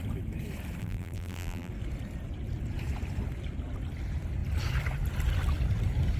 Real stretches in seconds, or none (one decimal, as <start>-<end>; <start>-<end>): 0.0-0.8; 1.7-6.2